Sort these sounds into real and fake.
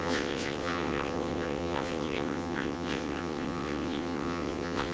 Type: fake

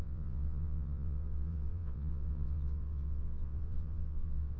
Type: fake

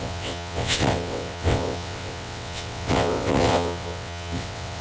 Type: fake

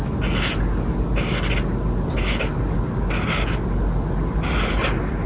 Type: real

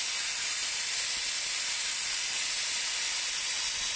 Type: real